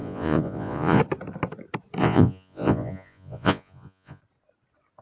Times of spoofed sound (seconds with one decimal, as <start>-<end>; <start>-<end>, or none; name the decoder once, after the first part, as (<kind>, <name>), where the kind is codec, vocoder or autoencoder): 0.0-1.0 (vocoder, Vocos); 2.0-4.2